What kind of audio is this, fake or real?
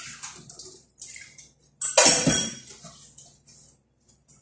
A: real